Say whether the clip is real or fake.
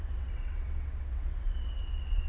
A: fake